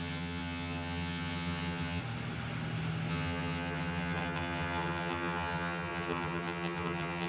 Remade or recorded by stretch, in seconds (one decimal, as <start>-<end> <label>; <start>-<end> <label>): 0.0-2.0 remade; 2.0-3.1 recorded; 3.1-7.3 remade